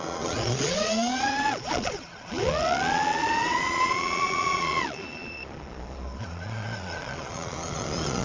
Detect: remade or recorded remade